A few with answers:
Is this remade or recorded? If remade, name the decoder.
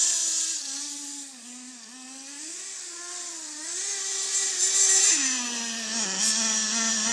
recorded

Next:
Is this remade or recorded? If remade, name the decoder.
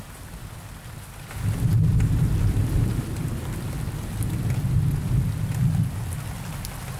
recorded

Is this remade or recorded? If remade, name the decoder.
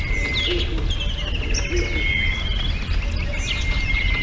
recorded